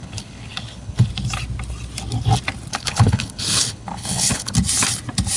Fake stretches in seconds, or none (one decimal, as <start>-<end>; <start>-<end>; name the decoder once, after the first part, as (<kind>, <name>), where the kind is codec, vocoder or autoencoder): 0.0-1.1 (codec, HILCodec); 2.7-4.5